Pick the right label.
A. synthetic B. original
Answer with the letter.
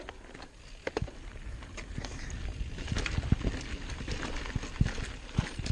B